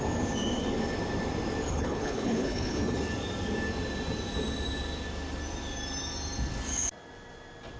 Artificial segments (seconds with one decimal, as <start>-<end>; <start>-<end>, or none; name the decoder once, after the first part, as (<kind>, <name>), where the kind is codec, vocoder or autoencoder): 1.7-2.8 (codec, HILCodec)